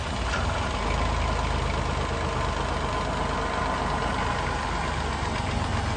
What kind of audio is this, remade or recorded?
recorded